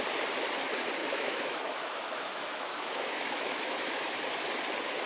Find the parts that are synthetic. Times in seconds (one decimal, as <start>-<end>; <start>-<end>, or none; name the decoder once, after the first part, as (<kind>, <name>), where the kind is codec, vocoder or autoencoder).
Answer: 1.0-4.1 (autoencoder, DAC-VAE)